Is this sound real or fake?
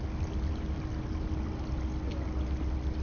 real